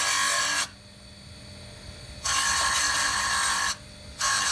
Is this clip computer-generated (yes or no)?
no